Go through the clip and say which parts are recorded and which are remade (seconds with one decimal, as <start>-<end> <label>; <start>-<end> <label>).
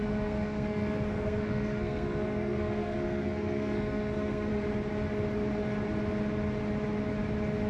0.0-4.5 remade; 4.5-7.7 recorded